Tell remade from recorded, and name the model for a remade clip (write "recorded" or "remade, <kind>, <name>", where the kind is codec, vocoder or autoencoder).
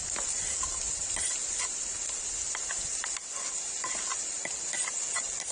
recorded